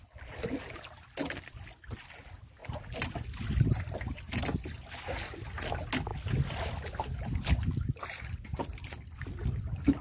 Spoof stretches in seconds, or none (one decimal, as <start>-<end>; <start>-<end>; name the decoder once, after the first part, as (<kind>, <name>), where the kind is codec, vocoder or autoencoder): none